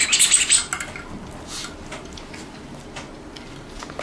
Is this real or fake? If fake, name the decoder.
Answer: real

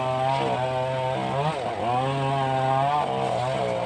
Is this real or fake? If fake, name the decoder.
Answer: real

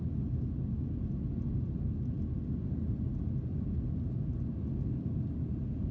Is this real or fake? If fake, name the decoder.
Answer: real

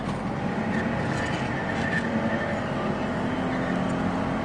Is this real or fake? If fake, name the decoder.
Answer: real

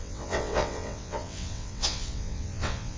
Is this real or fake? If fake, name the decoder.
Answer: fake, vocoder, WaveNeXt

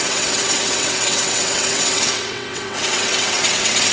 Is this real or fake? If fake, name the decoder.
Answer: fake, vocoder, WaveNeXt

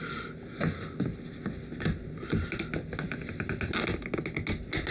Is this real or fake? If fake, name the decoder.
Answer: real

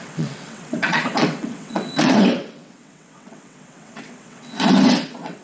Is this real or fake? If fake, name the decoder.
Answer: fake, vocoder, WaveNeXt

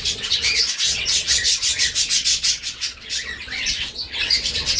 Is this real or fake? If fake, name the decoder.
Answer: fake, vocoder, WaveNeXt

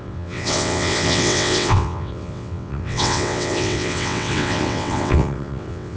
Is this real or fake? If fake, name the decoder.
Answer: fake, vocoder, WaveNeXt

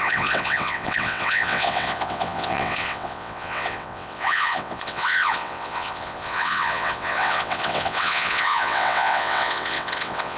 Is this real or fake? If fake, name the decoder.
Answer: fake, vocoder, WaveNeXt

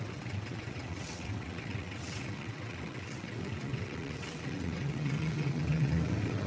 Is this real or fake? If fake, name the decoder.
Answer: fake, vocoder, WaveNeXt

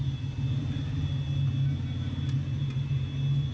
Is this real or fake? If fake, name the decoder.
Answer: real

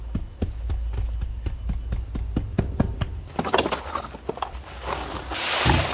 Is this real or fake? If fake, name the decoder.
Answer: real